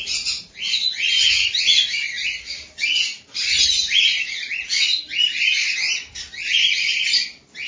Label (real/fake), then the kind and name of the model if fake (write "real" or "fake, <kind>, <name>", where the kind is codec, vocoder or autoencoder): fake, vocoder, BigVGAN v2